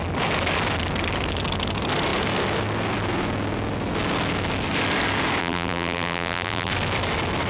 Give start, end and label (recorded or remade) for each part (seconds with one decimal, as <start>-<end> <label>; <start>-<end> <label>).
0.0-5.4 recorded; 5.4-6.7 remade; 6.7-7.5 recorded